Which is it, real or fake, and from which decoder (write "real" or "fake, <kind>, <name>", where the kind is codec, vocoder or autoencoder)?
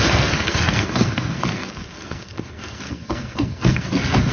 fake, codec, SNAC